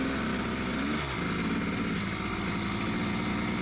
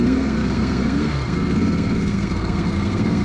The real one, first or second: first